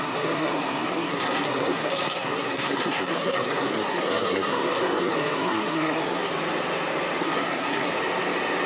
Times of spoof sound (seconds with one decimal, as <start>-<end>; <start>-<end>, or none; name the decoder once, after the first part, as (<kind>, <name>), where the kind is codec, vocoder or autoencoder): 0.0-6.3 (codec, SNAC); 7.2-7.9